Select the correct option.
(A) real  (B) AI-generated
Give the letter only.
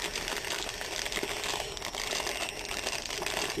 A